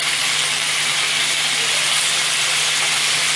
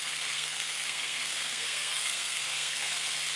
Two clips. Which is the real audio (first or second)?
first